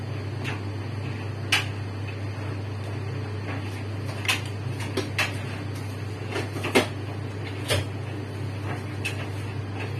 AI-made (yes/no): no